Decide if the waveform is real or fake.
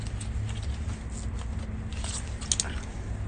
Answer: real